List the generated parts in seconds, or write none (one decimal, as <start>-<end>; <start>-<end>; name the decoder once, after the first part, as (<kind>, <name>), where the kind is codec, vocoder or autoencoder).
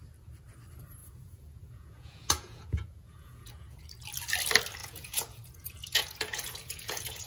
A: 1.0-3.8 (vocoder, Vocos); 4.8-7.3